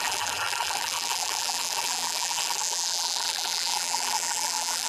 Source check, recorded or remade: remade